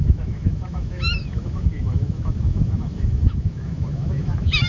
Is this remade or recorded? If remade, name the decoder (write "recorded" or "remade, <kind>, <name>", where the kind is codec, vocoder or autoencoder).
remade, autoencoder, DAC-VAE